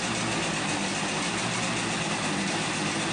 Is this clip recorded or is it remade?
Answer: recorded